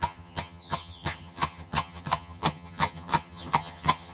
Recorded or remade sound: remade